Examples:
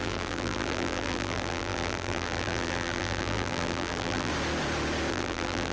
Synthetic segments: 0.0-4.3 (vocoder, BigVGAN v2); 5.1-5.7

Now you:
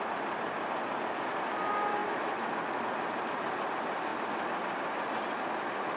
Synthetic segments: none

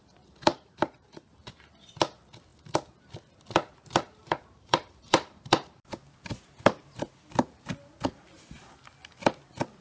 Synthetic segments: 0.5-1.3 (vocoder, BigVGAN v2); 4.2-7.7

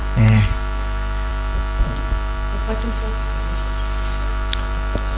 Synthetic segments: 2.6-4.3 (vocoder, BigVGAN v2)

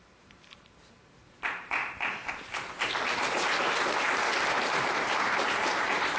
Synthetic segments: 0.0-1.8 (vocoder, BigVGAN v2); 4.9-6.2

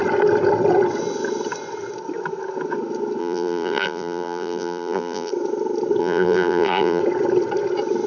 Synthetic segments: 3.2-5.3 (vocoder, BigVGAN v2); 6.0-7.0